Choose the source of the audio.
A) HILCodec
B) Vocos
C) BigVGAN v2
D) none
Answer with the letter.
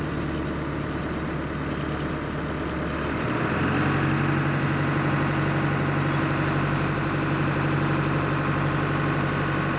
D